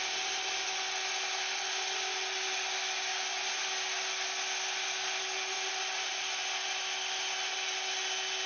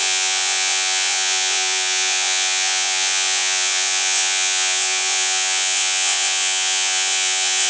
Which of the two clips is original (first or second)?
first